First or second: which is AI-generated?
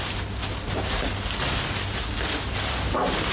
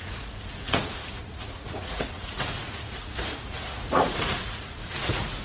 second